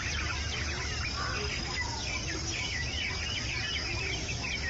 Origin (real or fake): real